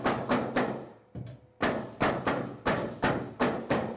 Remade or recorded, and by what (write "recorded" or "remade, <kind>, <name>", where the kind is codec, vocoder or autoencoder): recorded